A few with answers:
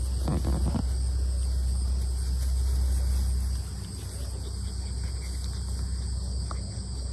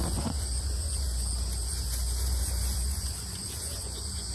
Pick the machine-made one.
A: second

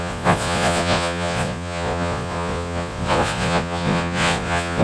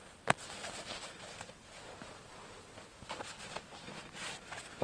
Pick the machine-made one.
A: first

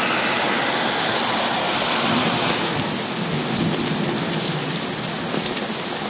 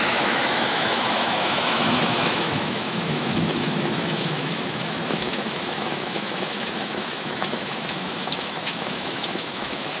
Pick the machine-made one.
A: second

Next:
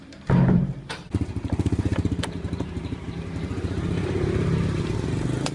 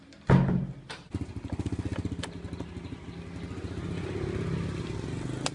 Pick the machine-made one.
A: first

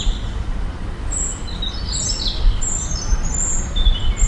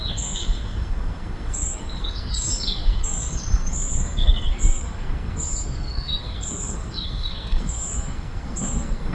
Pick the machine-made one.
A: second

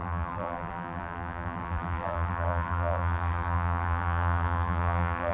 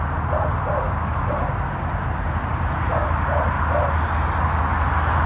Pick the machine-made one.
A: first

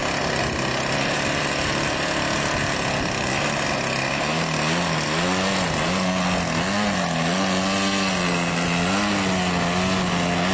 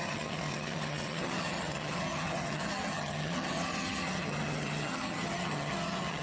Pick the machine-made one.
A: second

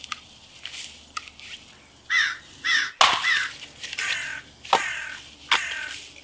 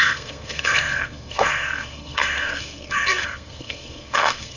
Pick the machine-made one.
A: second